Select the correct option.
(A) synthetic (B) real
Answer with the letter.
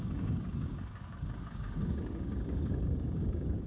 A